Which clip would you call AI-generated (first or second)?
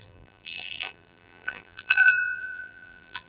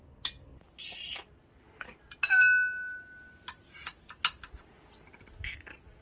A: first